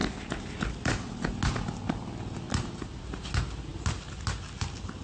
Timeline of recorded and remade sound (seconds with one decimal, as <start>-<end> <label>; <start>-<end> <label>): 0.0-5.0 recorded